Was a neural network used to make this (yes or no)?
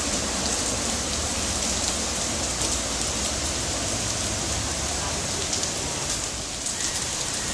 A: no